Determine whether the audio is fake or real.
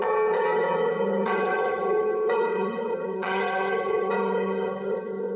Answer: fake